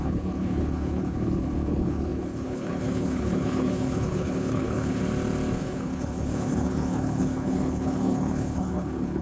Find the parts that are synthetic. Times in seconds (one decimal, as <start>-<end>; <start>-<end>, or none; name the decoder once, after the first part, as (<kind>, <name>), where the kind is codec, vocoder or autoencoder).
0.0-5.0 (codec, HILCodec); 5.6-9.2